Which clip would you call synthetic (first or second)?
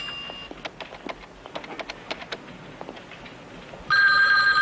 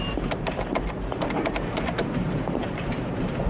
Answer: second